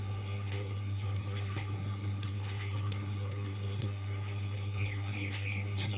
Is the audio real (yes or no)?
no